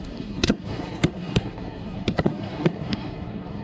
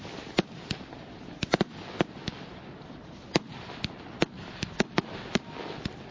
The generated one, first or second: first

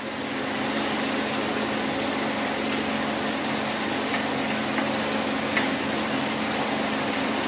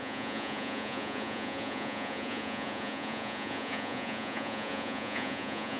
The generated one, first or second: second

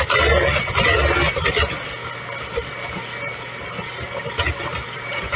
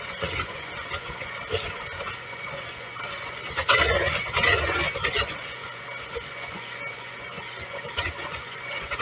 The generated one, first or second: second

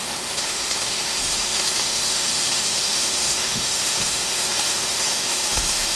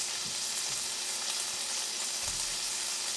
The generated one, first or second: first